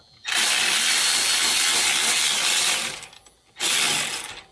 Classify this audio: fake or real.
real